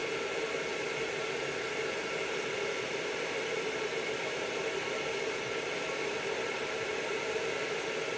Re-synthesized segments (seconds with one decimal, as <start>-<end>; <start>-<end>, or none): none